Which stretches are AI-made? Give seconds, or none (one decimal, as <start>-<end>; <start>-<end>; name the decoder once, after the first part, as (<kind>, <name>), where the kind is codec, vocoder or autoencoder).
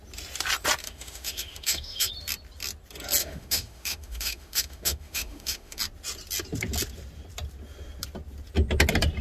0.8-2.1 (autoencoder, DAC-VAE); 3.2-5.8